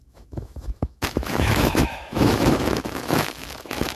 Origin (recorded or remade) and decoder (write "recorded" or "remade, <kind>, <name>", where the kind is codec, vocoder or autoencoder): remade, autoencoder, DAC-VAE